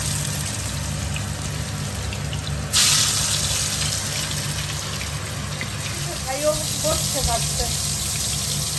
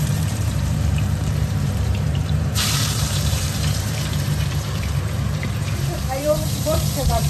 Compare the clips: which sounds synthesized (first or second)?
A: second